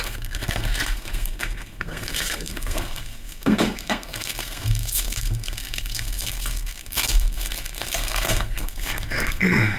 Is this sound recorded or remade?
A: remade